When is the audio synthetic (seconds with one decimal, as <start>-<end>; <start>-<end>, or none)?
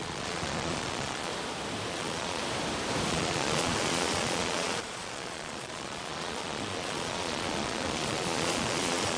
0.0-1.3; 1.9-2.4; 3.1-9.2